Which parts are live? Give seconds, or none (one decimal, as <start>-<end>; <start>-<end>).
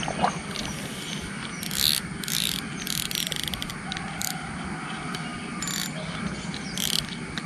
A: 0.0-5.3; 6.2-7.5